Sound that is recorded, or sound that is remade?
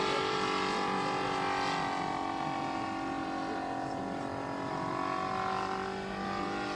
recorded